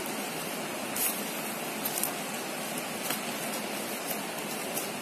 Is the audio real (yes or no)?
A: yes